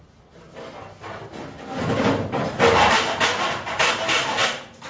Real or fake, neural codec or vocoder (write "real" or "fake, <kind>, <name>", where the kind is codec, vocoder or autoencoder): real